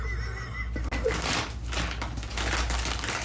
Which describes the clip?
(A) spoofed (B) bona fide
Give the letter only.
B